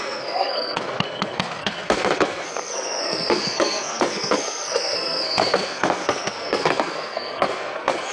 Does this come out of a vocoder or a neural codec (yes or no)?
yes